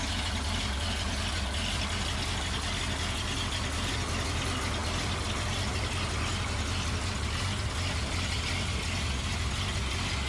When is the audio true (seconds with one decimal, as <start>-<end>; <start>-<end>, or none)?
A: 0.0-10.3